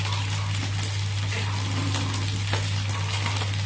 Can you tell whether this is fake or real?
real